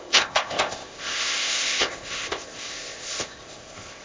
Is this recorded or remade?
remade